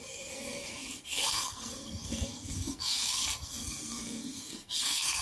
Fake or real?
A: fake